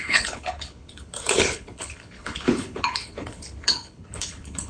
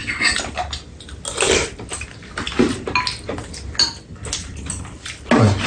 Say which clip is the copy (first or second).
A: first